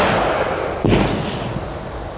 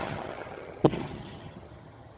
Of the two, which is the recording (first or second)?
first